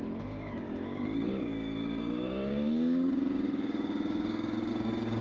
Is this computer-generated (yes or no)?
yes